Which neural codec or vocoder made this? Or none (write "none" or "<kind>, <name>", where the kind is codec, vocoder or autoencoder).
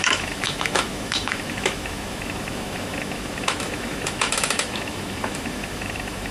autoencoder, DAC-VAE